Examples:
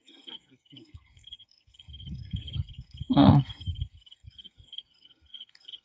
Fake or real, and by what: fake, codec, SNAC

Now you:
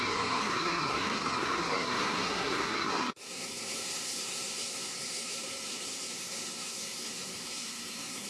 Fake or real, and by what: fake, codec, SNAC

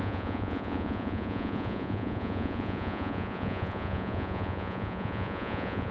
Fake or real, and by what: fake, vocoder, Vocos